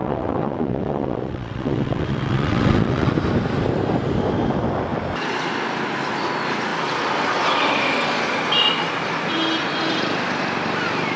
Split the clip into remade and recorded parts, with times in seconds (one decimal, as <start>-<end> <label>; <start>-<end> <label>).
0.0-3.1 remade; 3.1-11.2 recorded